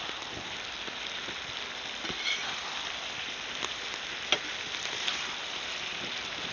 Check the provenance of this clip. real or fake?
real